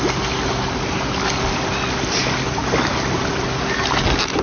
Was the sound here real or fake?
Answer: real